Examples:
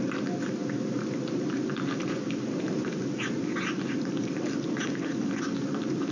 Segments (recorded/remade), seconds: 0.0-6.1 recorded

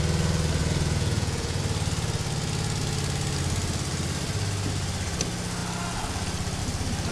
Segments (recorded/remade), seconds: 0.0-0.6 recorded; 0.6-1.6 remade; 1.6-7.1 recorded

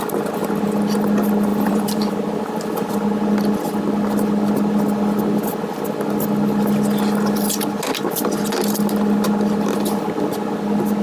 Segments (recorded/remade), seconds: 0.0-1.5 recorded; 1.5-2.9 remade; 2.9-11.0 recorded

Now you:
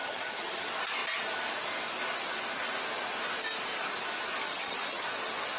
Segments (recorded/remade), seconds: 0.0-0.6 remade; 0.6-4.4 recorded; 4.4-5.0 remade; 5.0-5.6 recorded

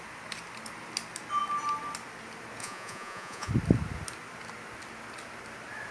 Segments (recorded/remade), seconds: 0.0-2.6 recorded; 2.6-3.5 remade; 3.5-5.9 recorded